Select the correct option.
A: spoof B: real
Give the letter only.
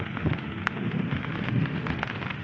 A